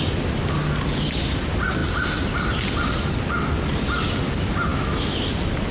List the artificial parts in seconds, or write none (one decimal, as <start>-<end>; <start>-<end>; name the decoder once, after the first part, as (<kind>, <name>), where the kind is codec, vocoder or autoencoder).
4.7-5.2 (autoencoder, DAC-VAE)